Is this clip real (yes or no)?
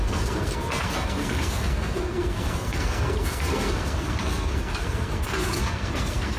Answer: no